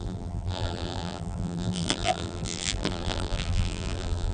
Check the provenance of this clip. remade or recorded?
remade